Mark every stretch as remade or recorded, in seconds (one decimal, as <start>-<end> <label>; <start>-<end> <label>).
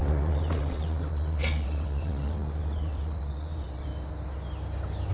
0.0-3.9 remade; 3.9-5.1 recorded